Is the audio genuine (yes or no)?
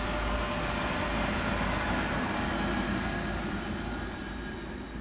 yes